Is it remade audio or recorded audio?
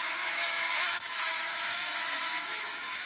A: remade